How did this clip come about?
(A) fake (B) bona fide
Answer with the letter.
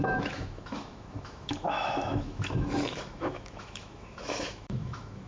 A